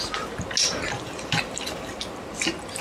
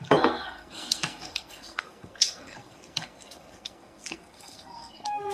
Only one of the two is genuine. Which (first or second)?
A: first